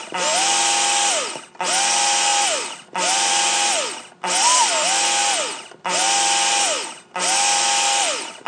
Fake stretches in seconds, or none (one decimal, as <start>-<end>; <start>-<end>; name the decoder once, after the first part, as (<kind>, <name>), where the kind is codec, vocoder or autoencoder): none